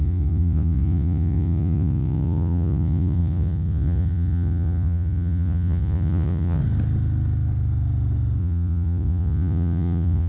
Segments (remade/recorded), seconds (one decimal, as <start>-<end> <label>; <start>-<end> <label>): 0.0-6.6 remade; 6.6-8.4 recorded; 8.4-10.3 remade